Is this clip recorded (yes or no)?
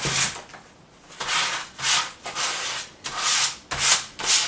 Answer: yes